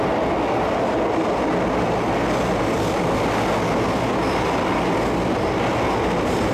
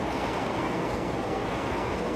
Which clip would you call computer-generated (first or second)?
second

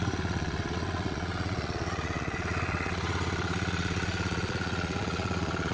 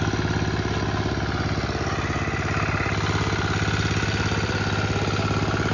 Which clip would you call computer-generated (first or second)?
first